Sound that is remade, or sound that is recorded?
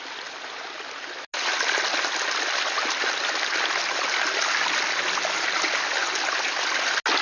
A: recorded